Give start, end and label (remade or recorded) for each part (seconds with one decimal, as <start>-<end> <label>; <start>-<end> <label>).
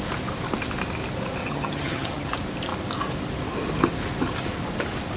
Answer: 0.0-1.4 recorded; 1.4-2.3 remade; 2.3-5.2 recorded